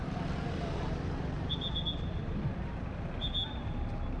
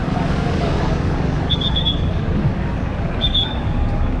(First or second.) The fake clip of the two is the second